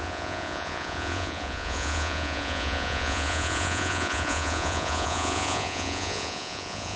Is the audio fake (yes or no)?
yes